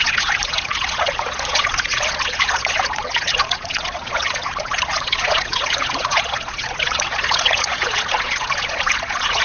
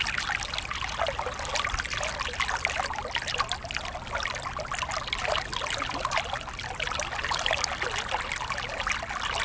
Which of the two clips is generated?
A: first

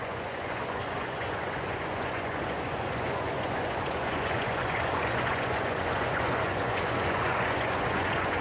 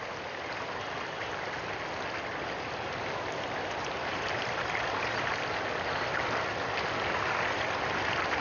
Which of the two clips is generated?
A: first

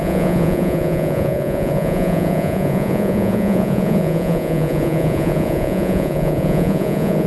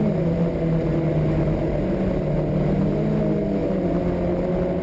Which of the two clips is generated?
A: first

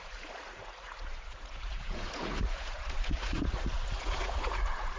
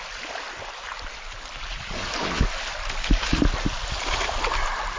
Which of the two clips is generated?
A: first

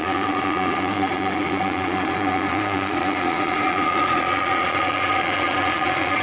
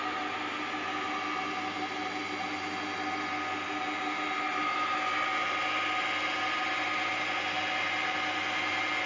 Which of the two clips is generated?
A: first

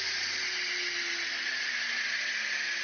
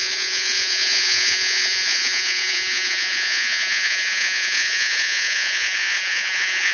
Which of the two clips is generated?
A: second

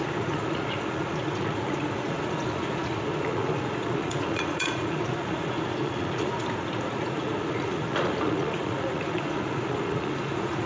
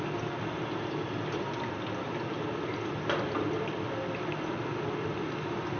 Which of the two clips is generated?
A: first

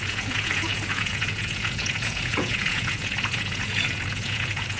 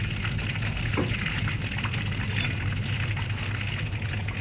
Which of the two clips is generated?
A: first